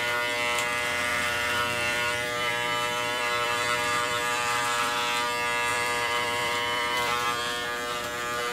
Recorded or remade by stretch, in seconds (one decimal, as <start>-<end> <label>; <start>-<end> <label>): 0.0-1.1 recorded; 1.1-5.0 remade; 5.0-5.7 recorded; 5.7-7.4 remade; 7.4-8.5 recorded